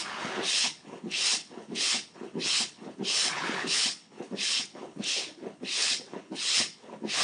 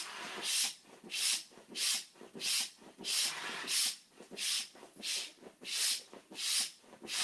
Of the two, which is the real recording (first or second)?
second